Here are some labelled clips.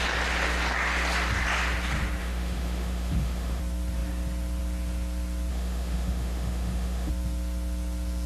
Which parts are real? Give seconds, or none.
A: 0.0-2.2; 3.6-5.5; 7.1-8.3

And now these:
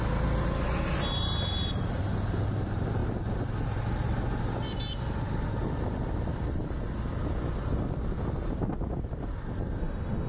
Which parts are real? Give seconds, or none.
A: 0.0-9.8

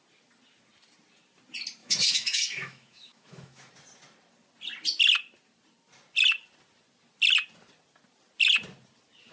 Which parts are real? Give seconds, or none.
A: 0.0-1.8; 3.7-9.3